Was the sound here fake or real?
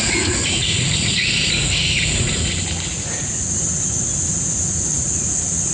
fake